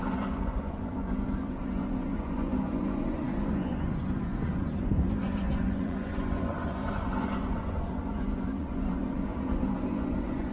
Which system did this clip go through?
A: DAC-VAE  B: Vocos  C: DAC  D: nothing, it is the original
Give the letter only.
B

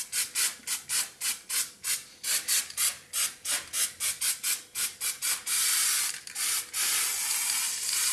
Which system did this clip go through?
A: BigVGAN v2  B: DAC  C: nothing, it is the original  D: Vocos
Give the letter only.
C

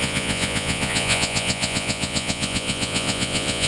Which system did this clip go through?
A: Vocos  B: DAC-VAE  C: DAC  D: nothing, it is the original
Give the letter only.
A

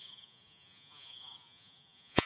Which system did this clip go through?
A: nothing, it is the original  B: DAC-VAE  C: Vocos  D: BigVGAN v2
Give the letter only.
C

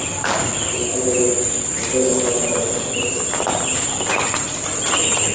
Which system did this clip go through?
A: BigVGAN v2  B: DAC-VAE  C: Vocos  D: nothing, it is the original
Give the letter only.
D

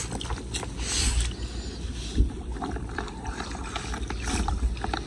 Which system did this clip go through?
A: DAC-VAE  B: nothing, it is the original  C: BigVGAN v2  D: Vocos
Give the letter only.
B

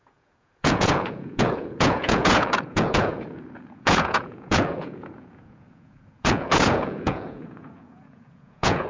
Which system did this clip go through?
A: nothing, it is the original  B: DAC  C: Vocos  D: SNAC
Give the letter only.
C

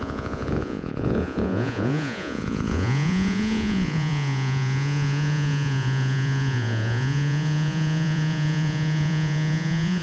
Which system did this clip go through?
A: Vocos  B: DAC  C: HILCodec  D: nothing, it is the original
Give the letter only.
A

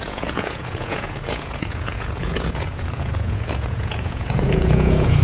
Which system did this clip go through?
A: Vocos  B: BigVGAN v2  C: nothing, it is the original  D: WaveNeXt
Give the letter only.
A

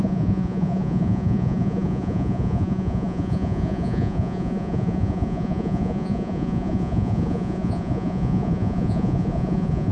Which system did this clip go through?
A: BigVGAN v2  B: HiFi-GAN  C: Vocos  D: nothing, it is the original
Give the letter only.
C